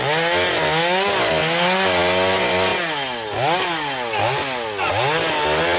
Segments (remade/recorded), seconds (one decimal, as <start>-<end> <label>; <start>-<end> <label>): 0.0-5.8 recorded